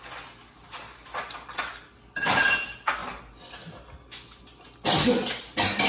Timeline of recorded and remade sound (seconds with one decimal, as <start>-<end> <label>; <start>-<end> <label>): 0.0-5.9 recorded